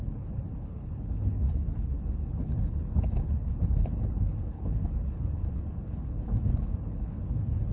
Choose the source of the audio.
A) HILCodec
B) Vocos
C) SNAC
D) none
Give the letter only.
A